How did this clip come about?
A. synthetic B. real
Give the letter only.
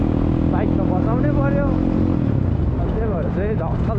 B